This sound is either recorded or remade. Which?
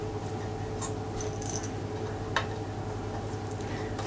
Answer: recorded